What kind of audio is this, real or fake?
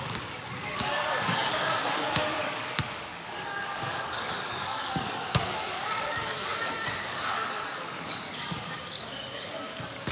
fake